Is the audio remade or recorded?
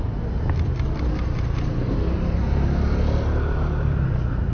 recorded